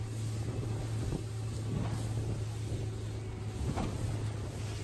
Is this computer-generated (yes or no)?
no